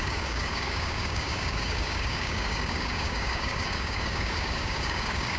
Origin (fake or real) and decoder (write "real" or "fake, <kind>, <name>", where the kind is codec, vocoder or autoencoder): fake, codec, DAC